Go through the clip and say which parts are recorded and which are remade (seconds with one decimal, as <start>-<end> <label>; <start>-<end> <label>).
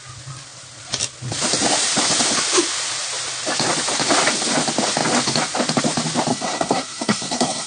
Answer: 0.0-6.3 recorded; 6.3-7.7 remade